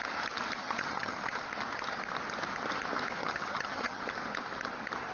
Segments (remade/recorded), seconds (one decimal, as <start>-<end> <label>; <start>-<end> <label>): 0.0-0.6 recorded; 0.6-1.4 remade; 1.4-3.2 recorded; 3.2-4.0 remade; 4.0-5.1 recorded